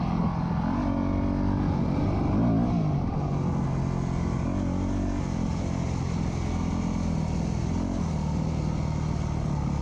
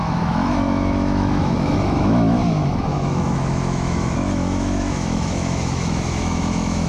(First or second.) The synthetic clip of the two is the second